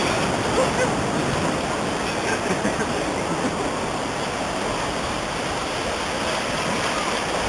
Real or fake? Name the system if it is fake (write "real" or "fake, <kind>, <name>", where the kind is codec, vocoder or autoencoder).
real